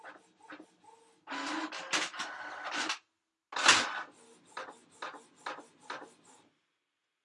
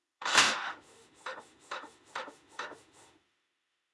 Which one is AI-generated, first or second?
second